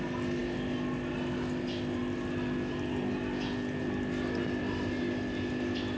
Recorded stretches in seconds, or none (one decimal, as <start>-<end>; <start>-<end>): 0.0-6.0